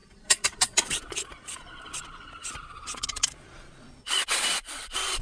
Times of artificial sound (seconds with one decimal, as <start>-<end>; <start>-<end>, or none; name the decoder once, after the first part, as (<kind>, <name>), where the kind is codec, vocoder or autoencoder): 0.0-5.2 (vocoder, Vocos)